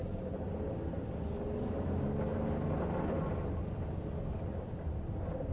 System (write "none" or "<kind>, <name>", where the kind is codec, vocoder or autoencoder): none